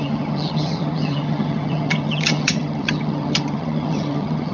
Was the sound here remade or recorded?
remade